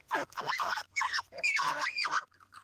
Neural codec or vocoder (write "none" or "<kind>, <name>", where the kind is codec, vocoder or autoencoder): codec, SNAC